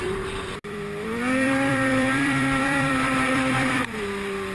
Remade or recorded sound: remade